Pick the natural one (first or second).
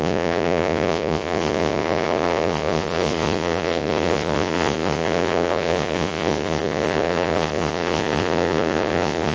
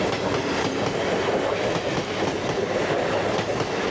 second